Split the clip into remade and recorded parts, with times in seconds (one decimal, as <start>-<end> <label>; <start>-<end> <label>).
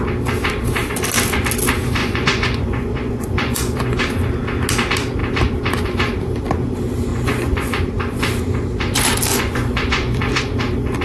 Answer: 0.0-2.0 recorded; 2.0-4.0 remade; 4.0-7.1 recorded; 7.1-7.8 remade; 7.8-9.3 recorded; 9.3-10.4 remade; 10.4-11.0 recorded